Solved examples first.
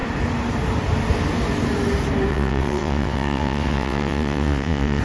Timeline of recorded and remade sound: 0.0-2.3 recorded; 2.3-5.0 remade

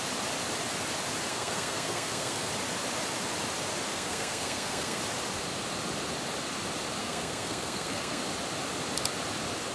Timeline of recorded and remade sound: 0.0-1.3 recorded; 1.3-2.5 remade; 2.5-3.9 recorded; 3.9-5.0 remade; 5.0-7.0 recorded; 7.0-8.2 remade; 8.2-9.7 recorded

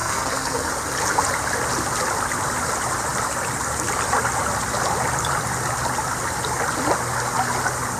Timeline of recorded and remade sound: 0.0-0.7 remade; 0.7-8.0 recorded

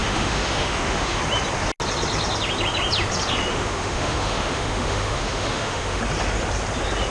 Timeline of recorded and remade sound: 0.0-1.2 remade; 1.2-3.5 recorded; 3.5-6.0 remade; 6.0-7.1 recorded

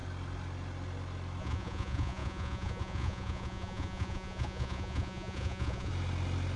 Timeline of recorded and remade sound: 0.0-1.4 recorded; 1.4-5.9 remade; 5.9-6.6 recorded

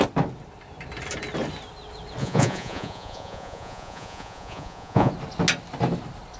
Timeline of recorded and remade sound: 0.0-2.2 recorded; 2.2-5.1 remade; 5.1-6.4 recorded

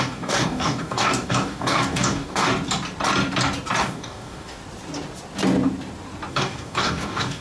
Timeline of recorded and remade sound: 0.0-2.5 remade; 2.5-3.8 recorded; 3.8-4.6 remade; 4.6-6.3 recorded; 6.3-7.4 remade

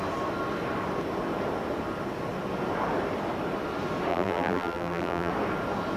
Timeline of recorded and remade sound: 0.0-4.1 recorded; 4.1-5.3 remade; 5.3-6.0 recorded